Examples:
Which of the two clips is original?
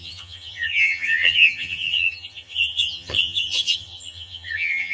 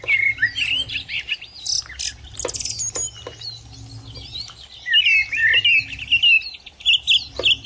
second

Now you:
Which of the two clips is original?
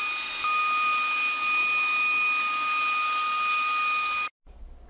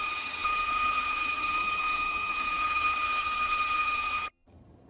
first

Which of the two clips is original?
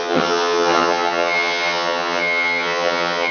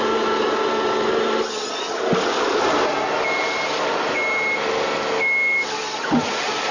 second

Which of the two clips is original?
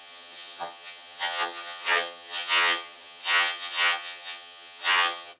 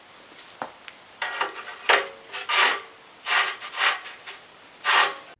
second